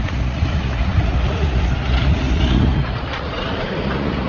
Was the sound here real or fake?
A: fake